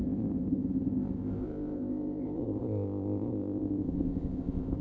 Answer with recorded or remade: remade